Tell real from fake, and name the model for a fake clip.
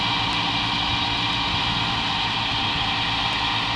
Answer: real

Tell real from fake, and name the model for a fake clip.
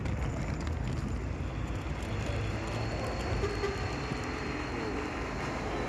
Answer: real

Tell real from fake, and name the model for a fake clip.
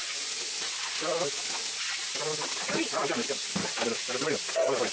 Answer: real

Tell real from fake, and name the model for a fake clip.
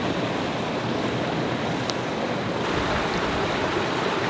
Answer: real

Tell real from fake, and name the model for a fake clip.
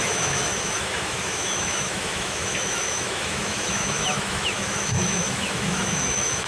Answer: fake, autoencoder, DAC-VAE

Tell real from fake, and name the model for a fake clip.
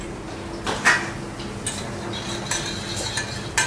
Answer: real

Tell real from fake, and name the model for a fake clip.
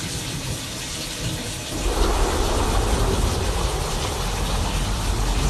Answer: real